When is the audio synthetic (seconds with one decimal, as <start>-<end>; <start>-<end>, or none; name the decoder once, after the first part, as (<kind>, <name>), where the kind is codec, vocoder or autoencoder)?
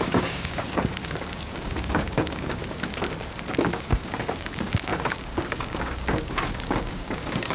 0.0-2.9 (codec, DAC); 3.5-7.5